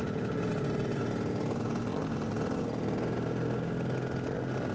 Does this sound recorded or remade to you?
recorded